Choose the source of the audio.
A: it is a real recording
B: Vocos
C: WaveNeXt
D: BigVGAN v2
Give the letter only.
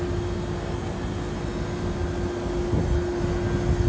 A